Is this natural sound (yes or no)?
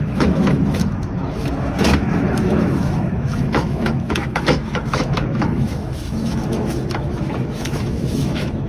no